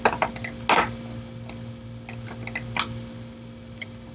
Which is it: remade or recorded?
recorded